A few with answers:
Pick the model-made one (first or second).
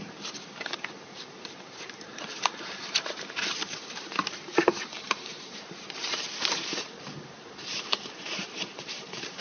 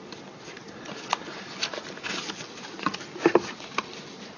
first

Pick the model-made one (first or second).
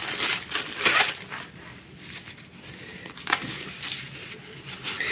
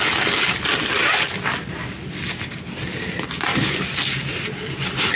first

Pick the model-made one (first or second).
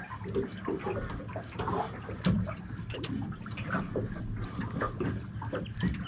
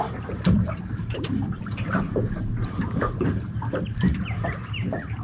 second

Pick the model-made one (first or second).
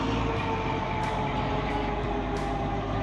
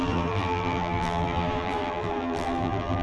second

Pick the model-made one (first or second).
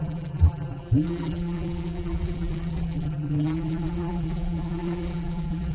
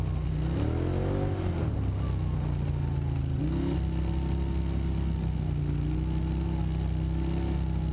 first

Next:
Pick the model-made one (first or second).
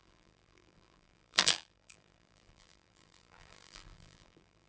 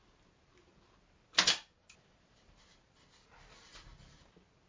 first